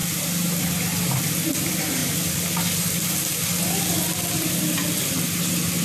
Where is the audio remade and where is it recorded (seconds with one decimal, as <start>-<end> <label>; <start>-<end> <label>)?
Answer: 0.0-5.8 recorded